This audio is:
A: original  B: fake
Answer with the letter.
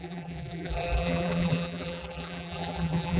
B